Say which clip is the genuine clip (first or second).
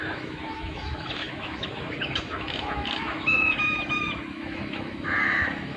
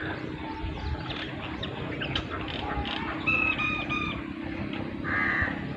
second